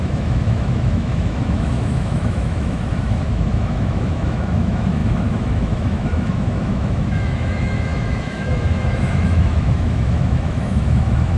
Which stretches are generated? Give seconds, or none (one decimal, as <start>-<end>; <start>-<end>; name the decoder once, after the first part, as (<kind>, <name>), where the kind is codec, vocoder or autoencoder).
0.0-11.4 (autoencoder, DAC-VAE)